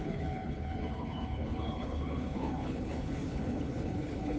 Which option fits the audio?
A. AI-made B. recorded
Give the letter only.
A